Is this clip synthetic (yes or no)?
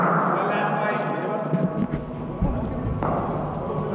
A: no